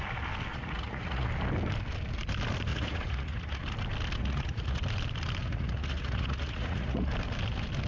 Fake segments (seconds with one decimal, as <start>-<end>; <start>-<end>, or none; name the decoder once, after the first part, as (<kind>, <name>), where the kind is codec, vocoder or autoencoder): 0.5-1.3 (vocoder, Vocos); 2.7-3.6; 4.2-4.8; 5.4-7.1